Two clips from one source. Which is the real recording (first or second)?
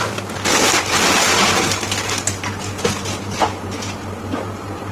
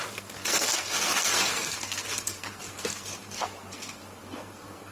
first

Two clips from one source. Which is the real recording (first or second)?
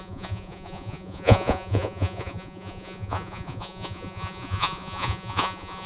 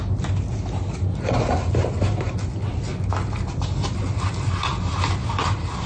second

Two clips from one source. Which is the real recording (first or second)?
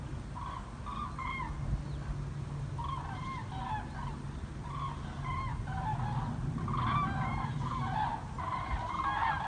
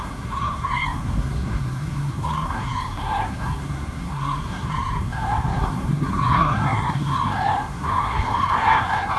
first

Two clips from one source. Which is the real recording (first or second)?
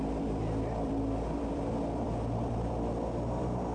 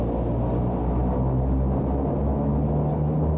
second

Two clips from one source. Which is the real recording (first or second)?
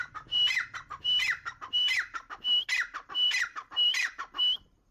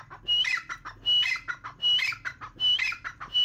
second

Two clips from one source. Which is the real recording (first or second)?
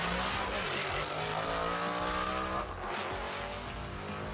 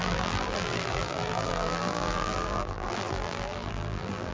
first